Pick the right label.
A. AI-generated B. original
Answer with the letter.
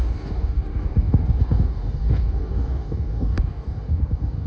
A